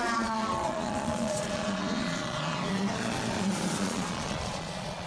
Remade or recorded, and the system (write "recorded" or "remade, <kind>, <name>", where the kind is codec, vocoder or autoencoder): remade, vocoder, Vocos